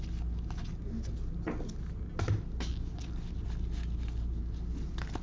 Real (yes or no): yes